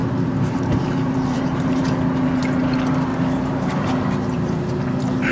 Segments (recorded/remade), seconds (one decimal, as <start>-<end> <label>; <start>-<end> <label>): 0.0-1.9 remade; 1.9-3.1 recorded; 3.1-3.9 remade; 3.9-5.3 recorded